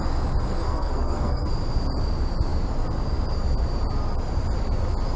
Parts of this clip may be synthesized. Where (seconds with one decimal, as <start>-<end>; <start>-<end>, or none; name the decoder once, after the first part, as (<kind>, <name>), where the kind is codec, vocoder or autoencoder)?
0.5-1.5 (codec, SNAC)